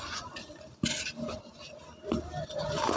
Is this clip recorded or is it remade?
recorded